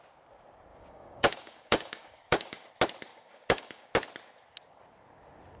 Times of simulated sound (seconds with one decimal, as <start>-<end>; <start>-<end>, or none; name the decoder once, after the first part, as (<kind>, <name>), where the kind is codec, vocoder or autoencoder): 0.7-2.7 (codec, DAC); 3.1-3.9